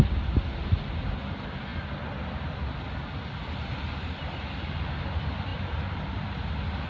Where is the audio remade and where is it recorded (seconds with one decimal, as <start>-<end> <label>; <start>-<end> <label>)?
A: 0.0-6.9 recorded